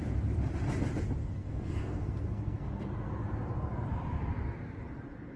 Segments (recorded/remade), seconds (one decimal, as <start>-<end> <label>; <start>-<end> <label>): 0.0-1.2 recorded; 1.2-3.1 remade; 3.1-5.4 recorded